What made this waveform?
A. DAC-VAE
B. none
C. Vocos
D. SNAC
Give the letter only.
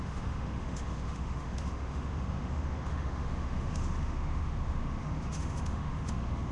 A